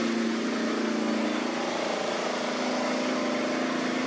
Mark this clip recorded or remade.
recorded